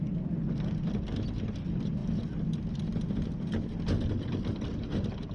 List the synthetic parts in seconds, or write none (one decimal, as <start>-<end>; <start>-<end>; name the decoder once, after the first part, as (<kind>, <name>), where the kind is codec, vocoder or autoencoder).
none